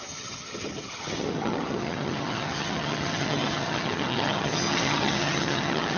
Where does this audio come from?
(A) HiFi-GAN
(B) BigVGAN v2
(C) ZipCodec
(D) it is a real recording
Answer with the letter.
A